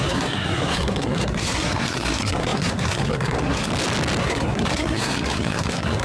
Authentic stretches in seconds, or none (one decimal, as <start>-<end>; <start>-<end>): 3.7-4.2